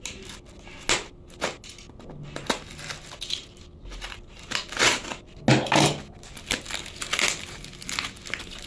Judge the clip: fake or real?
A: real